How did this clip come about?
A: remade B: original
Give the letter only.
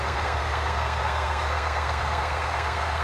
A